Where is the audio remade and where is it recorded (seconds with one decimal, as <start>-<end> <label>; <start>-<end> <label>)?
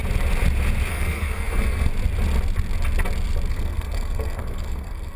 0.0-0.9 recorded; 0.9-1.9 remade; 1.9-3.5 recorded; 3.5-5.2 remade